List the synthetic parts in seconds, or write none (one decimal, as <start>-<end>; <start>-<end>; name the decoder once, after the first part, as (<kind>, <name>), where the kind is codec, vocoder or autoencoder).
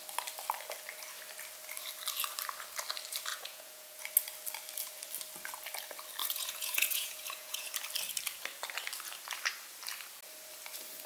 3.3-4.0 (vocoder, Vocos); 6.2-7.7